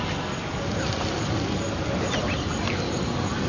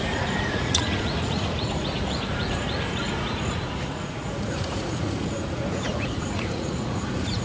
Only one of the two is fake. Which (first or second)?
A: second